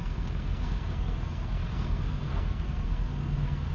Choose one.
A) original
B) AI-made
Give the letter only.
B